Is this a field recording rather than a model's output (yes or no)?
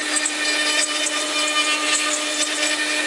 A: yes